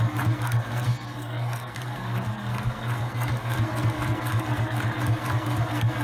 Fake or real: fake